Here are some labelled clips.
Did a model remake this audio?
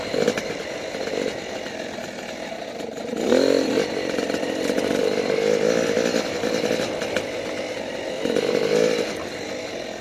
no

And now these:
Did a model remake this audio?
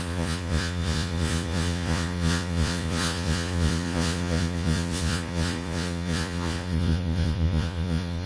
yes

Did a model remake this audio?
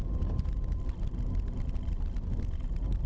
no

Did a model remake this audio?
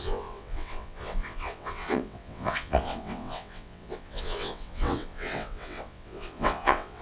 yes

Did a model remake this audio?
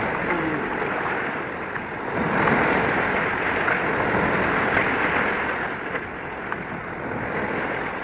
no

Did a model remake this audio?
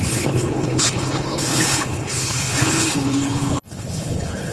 yes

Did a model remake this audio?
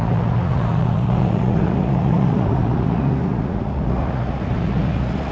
yes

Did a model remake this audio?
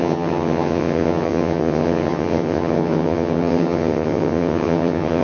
yes